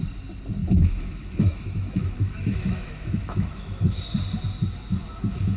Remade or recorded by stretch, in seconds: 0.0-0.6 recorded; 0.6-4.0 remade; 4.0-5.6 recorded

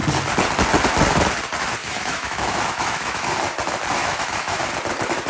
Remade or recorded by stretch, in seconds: 0.0-1.8 recorded; 1.8-3.3 remade; 3.3-4.0 recorded; 4.0-4.6 remade; 4.6-5.3 recorded